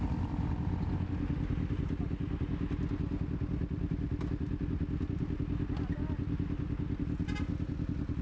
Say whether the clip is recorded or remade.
recorded